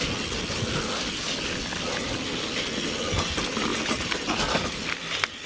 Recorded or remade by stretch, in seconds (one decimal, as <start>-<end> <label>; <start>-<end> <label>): 0.0-3.7 recorded; 3.7-4.9 remade; 4.9-5.5 recorded